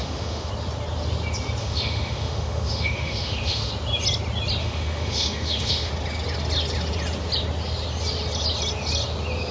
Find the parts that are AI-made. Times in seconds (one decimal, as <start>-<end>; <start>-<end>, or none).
0.0-0.5; 1.6-3.7; 4.6-5.9